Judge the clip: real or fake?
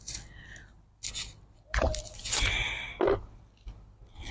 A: real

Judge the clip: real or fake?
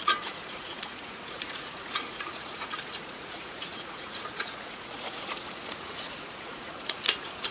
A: fake